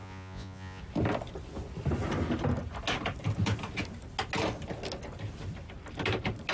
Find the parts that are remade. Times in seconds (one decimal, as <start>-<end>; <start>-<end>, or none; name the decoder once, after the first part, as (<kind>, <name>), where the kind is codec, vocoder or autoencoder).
0.0-0.8 (vocoder, Vocos)